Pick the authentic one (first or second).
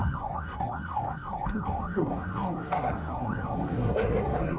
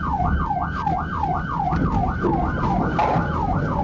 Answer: second